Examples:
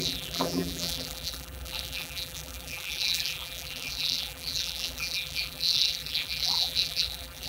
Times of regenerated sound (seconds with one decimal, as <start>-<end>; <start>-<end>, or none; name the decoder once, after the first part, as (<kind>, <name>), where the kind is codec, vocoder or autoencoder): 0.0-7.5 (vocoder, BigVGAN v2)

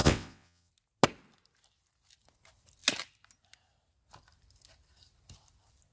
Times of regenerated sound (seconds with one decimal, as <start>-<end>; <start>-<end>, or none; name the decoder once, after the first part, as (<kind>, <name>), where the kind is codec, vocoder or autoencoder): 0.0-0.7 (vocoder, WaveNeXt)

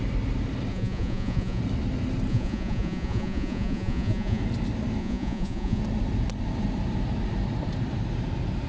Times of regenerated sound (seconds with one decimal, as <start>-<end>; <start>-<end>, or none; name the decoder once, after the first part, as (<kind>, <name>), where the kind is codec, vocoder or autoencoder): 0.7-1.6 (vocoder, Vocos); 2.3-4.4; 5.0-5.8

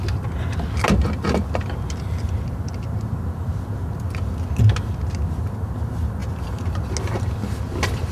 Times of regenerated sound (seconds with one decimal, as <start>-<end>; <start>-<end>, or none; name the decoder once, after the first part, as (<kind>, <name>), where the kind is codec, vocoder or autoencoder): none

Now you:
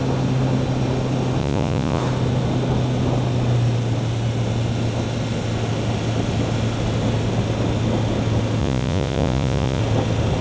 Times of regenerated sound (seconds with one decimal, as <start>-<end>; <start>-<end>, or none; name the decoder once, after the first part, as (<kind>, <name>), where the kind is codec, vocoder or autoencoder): 1.4-2.0 (vocoder, Vocos); 8.6-9.8

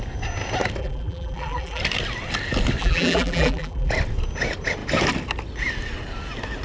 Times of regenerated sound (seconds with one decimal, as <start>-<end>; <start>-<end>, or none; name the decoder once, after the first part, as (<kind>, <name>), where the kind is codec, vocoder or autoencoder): 0.8-1.8 (vocoder, BigVGAN v2); 2.8-3.9